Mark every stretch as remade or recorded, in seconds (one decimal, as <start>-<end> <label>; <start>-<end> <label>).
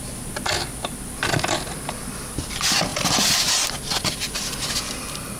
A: 0.0-5.4 recorded